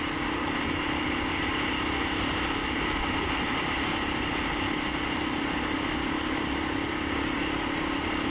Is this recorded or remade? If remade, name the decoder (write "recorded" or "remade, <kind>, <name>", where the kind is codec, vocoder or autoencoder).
recorded